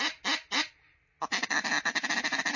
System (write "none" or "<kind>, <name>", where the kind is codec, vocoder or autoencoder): vocoder, BigVGAN v2